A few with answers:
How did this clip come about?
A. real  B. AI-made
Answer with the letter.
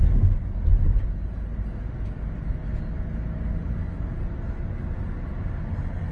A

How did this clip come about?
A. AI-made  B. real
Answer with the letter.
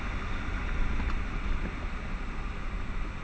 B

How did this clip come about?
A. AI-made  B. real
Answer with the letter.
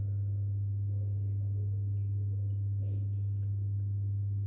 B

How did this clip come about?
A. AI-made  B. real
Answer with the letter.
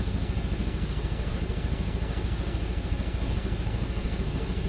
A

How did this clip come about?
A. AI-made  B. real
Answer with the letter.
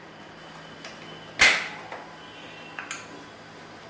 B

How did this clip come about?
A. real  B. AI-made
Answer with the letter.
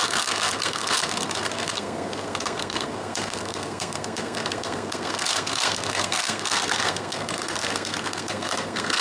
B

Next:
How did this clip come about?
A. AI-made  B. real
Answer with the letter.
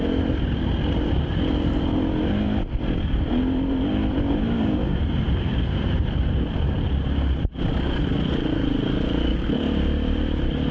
B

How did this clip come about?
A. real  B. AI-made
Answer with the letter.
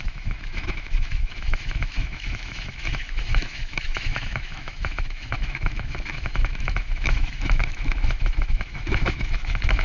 B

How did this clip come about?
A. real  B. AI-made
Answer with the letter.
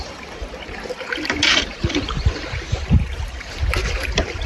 B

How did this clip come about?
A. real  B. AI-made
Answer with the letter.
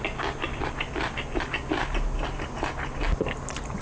A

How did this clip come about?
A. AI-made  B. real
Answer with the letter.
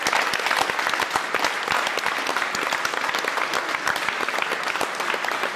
B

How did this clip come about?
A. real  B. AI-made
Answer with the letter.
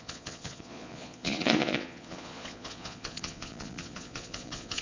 B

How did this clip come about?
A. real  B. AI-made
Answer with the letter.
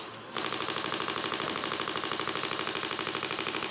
A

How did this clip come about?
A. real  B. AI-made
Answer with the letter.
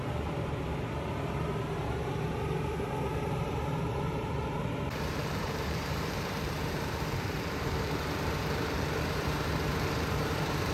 B